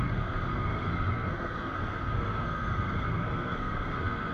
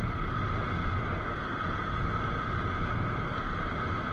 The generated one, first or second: first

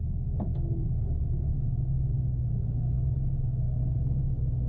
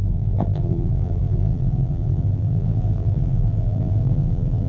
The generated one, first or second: second